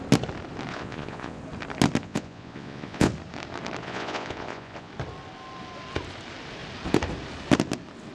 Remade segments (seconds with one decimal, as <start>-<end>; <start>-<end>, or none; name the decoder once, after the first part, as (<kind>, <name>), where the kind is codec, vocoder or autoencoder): 0.7-1.4 (vocoder, Vocos); 2.0-3.1; 3.8-4.9